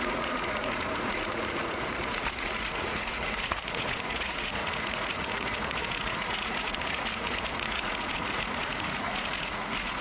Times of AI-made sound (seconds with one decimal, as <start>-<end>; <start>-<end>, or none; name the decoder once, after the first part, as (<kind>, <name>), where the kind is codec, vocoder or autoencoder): 0.0-10.0 (vocoder, Vocos)